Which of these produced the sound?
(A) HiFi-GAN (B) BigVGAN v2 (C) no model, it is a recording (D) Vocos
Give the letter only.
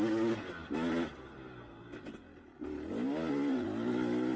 C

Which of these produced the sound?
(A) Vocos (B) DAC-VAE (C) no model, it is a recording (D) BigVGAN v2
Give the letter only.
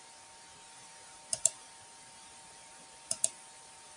D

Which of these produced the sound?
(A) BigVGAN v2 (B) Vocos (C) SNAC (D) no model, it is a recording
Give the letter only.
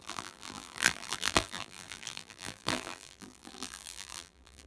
A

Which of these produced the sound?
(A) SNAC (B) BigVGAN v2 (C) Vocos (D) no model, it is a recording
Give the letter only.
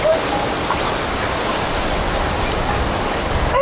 D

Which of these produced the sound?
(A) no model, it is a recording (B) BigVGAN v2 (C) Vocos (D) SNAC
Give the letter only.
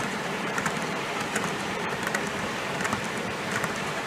B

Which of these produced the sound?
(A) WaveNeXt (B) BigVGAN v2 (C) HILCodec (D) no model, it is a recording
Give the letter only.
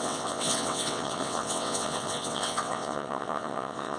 A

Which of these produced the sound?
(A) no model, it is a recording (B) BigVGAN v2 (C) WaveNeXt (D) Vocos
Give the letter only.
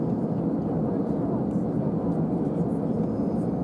A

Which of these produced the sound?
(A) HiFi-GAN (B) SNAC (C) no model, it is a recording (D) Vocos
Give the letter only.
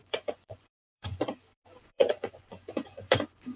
D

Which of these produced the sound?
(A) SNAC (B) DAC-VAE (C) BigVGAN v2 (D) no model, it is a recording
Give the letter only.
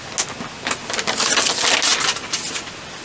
D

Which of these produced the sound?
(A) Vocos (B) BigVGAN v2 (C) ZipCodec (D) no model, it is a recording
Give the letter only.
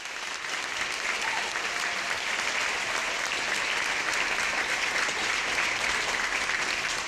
D